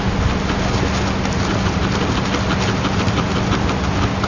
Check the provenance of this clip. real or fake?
real